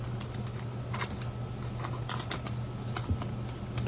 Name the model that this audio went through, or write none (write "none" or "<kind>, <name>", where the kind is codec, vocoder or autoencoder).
none